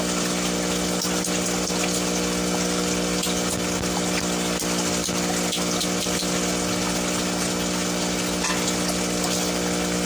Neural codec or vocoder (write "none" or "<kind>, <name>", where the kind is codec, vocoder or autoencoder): none